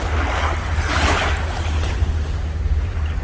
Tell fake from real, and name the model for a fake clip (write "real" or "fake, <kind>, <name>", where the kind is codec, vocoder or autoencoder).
real